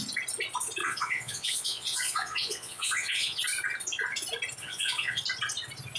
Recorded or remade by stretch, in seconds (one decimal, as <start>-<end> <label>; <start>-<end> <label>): 0.0-0.8 recorded; 0.8-3.4 remade; 3.4-4.6 recorded; 4.6-5.2 remade; 5.2-6.0 recorded